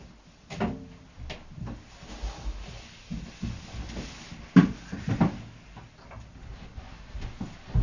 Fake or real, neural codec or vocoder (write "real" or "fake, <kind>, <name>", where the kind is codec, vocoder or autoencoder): real